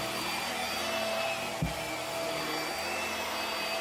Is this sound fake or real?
real